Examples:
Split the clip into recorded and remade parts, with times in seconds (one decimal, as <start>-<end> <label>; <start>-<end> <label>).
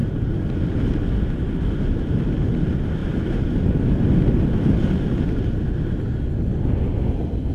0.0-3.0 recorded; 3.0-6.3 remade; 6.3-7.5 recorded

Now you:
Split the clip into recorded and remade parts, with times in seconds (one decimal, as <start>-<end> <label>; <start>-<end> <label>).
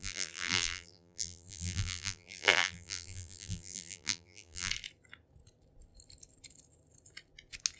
0.0-4.7 remade; 4.7-7.8 recorded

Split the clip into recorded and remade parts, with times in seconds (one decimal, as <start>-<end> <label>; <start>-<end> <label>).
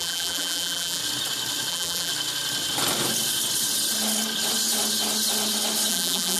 0.0-1.0 remade; 1.0-1.7 recorded; 1.7-2.1 remade; 2.1-5.9 recorded; 5.9-6.4 remade